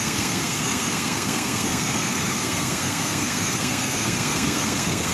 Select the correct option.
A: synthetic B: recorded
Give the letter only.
A